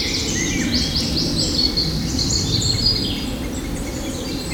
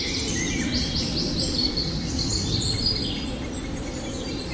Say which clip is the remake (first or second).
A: second